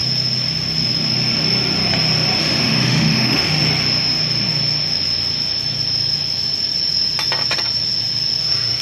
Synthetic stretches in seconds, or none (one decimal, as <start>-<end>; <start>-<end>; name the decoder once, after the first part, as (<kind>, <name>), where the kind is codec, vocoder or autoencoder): 2.4-3.6 (autoencoder, DAC-VAE); 8.4-8.8